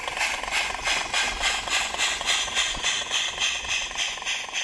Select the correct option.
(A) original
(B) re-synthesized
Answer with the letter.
B